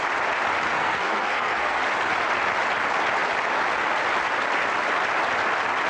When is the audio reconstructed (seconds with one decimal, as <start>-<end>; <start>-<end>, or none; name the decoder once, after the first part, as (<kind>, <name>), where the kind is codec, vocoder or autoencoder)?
0.7-1.8 (codec, SNAC)